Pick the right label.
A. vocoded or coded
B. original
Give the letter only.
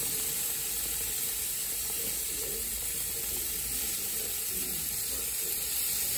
A